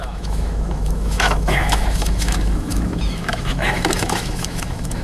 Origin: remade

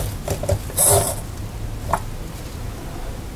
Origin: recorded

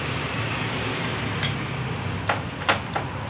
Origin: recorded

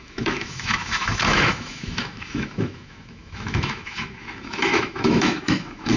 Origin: remade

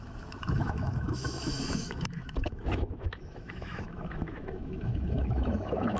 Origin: remade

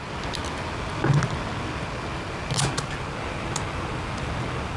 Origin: recorded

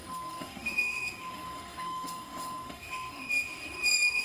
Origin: remade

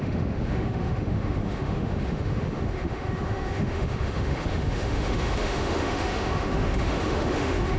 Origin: remade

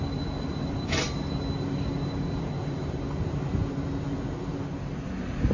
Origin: recorded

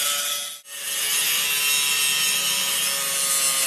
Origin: recorded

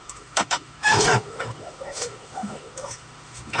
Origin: remade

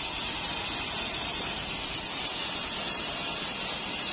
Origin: recorded